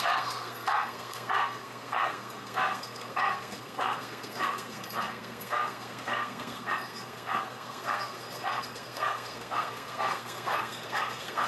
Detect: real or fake fake